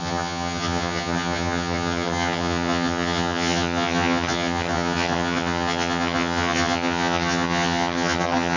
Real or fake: fake